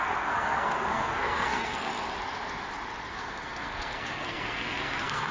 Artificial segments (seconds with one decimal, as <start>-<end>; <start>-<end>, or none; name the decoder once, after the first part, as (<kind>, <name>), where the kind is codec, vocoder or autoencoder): 0.0-1.9 (codec, SNAC); 3.1-5.3